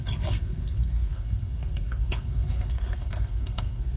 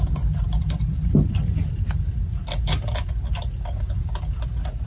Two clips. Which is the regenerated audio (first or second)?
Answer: first